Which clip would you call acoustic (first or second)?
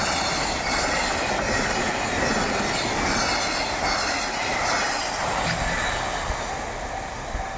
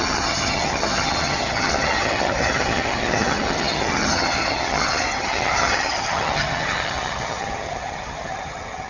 first